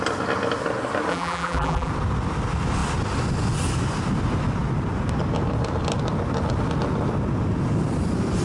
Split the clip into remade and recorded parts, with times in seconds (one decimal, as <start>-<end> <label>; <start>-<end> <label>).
0.0-1.1 recorded; 1.1-1.9 remade; 1.9-8.4 recorded